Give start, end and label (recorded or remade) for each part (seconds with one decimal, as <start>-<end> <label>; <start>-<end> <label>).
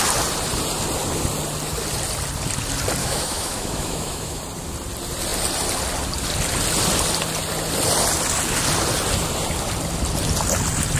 0.0-3.0 recorded; 3.0-4.4 remade; 4.4-11.0 recorded